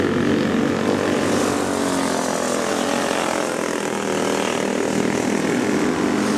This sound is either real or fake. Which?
real